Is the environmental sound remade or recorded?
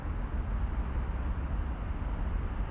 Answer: recorded